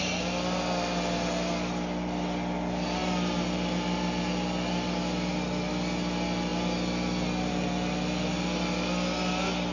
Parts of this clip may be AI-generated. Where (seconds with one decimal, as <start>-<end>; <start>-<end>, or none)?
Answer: 3.0-5.7; 6.5-7.5